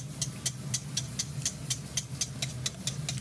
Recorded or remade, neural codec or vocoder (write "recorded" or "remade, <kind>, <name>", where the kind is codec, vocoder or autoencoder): recorded